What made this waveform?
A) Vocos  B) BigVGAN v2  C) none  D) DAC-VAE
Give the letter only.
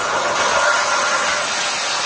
C